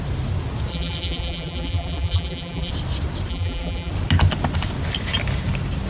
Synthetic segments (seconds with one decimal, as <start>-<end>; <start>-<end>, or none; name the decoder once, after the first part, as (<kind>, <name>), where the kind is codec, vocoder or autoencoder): 0.7-2.7 (vocoder, BigVGAN v2); 3.3-3.9